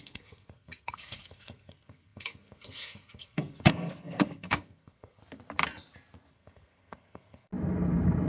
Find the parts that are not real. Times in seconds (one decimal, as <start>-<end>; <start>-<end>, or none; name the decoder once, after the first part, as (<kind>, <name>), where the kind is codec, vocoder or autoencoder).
0.0-5.2 (codec, SNAC); 6.3-7.5